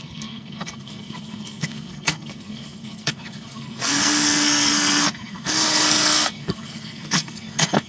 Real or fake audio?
fake